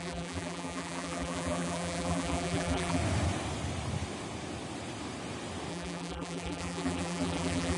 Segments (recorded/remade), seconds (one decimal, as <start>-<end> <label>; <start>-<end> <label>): 0.0-3.0 remade; 3.0-5.7 recorded; 5.7-7.8 remade